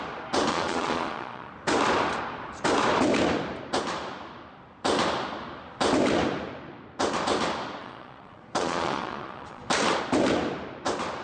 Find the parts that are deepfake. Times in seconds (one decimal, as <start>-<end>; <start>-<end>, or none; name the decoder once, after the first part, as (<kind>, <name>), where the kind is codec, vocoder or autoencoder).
0.5-1.5 (vocoder, Vocos); 7.8-9.6